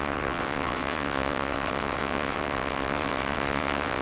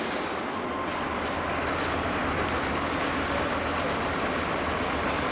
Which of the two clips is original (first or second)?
second